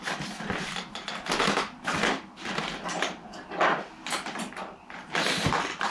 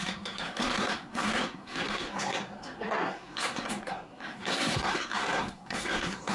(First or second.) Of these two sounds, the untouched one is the first